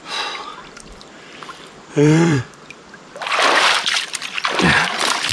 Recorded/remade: remade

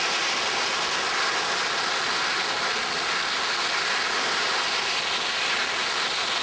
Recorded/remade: recorded